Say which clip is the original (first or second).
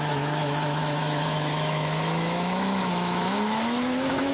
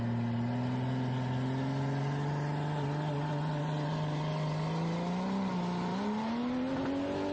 second